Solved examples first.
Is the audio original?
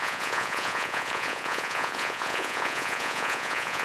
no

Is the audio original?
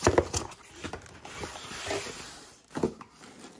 yes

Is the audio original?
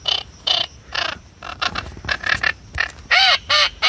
no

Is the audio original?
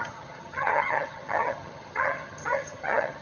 no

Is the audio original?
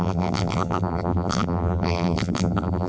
no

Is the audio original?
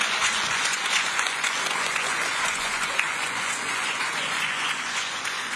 no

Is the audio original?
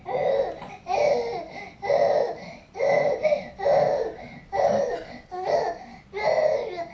yes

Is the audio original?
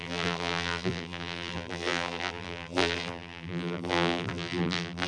no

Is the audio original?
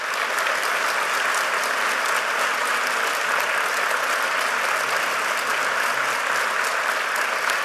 yes